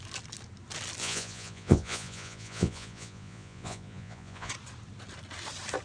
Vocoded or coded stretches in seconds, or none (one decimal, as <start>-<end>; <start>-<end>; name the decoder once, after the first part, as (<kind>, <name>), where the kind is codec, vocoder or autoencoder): 1.0-4.5 (vocoder, Vocos)

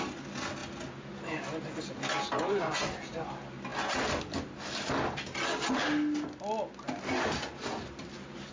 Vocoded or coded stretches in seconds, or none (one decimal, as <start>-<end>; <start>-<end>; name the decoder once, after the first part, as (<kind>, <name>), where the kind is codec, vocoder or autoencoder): none

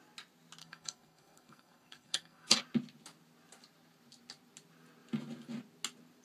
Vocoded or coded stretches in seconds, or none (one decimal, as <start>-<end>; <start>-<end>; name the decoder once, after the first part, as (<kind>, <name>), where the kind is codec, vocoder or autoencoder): 0.6-2.6 (codec, SNAC)

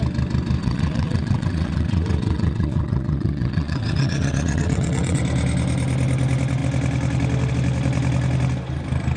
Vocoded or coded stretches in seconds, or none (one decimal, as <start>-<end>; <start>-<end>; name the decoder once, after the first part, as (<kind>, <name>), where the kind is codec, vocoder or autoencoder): 0.6-5.2 (vocoder, WaveNeXt)

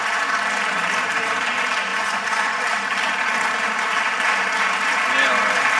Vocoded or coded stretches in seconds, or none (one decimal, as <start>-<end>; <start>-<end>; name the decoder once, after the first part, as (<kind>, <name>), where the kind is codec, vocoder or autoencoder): 1.9-2.6 (vocoder, Vocos)

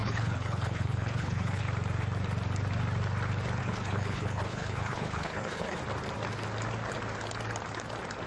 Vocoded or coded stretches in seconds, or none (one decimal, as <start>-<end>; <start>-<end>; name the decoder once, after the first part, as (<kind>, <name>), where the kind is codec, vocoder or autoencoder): 0.0-1.6 (codec, HILCodec); 3.6-5.8

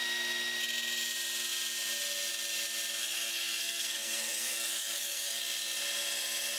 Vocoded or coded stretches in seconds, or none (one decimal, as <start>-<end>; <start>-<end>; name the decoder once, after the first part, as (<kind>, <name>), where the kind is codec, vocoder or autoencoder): 3.0-5.4 (codec, SNAC)

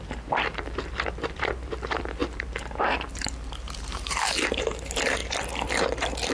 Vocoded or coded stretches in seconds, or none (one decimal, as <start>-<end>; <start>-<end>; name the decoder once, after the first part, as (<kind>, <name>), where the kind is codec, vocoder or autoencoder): 0.0-5.2 (vocoder, BigVGAN v2)